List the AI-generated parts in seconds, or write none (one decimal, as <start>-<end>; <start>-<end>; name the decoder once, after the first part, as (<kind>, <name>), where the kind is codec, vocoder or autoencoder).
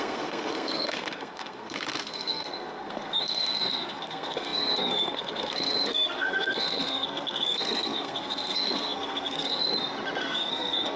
0.0-9.7 (codec, SNAC); 10.2-11.0